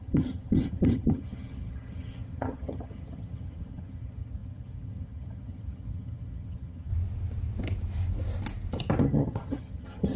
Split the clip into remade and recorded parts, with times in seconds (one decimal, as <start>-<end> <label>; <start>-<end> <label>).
0.0-6.9 remade; 6.9-9.0 recorded; 9.0-10.2 remade